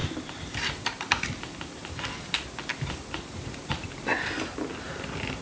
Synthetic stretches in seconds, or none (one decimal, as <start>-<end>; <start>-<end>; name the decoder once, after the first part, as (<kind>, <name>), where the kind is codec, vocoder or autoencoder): 0.0-4.1 (vocoder, BigVGAN v2); 4.8-5.4